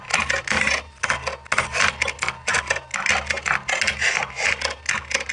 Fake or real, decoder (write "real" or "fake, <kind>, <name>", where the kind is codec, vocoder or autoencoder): real